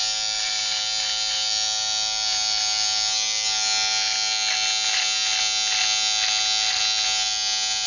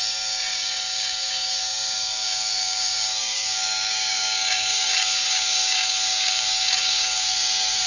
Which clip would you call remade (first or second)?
second